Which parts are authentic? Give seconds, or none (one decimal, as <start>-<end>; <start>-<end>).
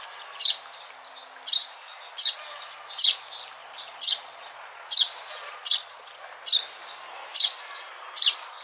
0.0-3.6; 4.9-5.6; 6.2-8.6